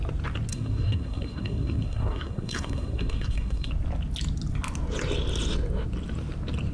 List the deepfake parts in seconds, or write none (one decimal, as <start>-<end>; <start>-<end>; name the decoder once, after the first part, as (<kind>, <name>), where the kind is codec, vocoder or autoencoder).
0.5-3.7 (codec, SNAC)